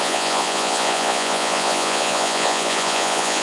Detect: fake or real fake